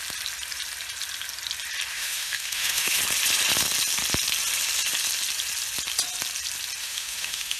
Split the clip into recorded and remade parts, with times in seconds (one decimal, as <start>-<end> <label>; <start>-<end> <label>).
0.0-1.9 recorded; 1.9-3.0 remade; 3.0-6.8 recorded; 6.8-7.6 remade